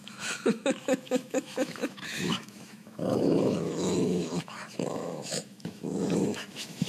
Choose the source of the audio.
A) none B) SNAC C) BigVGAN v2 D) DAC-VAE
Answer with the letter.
D